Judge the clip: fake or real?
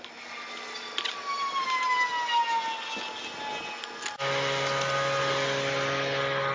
real